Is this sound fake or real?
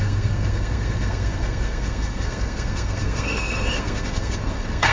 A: fake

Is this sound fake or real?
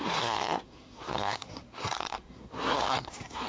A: fake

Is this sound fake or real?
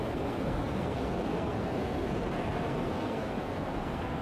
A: fake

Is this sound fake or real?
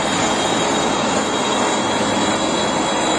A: real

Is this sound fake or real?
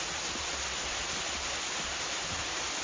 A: real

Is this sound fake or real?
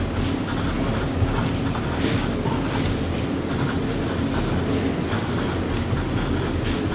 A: real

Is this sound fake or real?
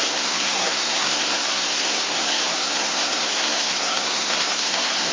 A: fake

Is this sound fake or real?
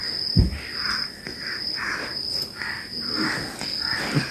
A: real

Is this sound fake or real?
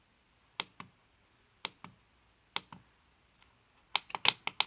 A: real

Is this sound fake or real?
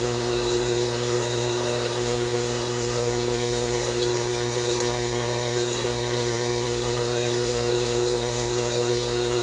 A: fake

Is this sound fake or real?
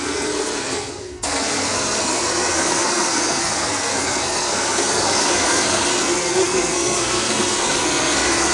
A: fake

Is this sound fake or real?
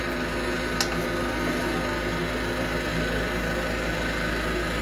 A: real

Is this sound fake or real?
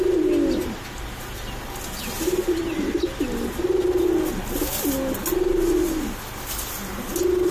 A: real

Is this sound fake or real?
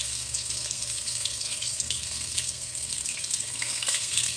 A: fake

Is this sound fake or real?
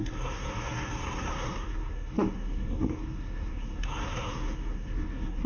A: fake